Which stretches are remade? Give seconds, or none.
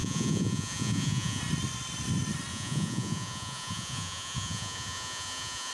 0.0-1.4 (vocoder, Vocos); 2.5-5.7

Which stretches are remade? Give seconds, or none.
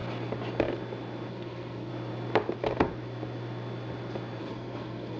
1.3-1.9 (codec, SNAC); 4.4-5.2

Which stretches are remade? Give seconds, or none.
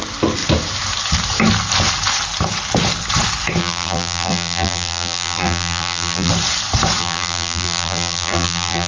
3.6-6.3 (vocoder, BigVGAN v2); 7.0-8.9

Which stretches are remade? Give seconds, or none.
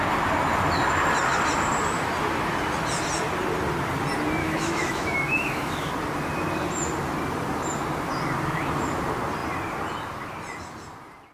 4.4-5.9 (autoencoder, DAC-VAE)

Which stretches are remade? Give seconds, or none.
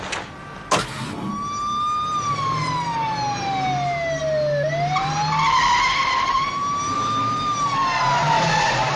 none